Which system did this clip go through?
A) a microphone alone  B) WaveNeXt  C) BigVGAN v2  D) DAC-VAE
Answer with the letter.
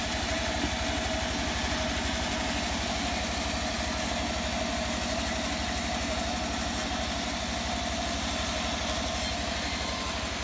A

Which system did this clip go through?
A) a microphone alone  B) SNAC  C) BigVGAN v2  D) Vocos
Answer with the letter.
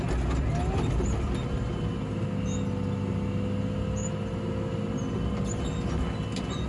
A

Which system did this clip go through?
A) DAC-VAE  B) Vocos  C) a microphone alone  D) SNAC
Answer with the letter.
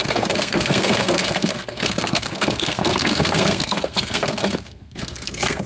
D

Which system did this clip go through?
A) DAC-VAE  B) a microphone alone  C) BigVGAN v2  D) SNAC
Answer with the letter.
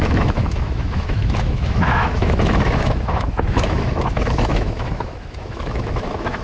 A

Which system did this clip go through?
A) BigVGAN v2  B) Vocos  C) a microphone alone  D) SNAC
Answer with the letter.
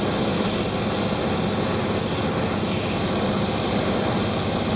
C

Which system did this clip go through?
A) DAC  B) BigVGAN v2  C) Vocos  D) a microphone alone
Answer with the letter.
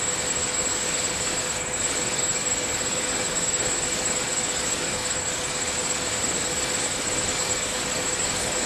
A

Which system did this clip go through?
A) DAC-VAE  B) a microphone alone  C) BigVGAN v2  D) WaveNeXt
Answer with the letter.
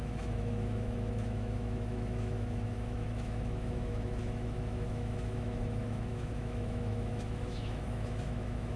A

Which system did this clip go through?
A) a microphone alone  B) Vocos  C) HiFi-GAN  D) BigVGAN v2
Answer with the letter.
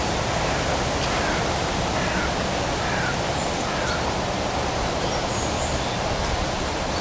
A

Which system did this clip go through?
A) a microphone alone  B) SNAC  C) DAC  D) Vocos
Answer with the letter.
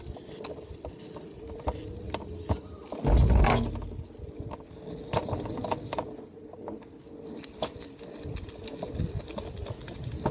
A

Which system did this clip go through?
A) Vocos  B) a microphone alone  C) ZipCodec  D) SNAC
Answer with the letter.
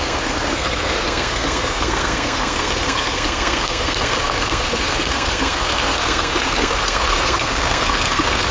D